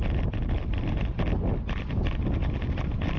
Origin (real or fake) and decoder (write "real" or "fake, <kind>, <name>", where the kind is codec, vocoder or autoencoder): real